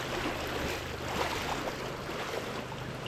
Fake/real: real